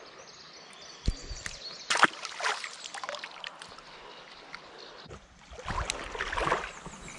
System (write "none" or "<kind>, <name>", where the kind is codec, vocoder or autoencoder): none